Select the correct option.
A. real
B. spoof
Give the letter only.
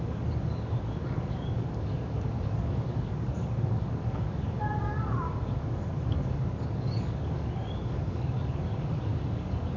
B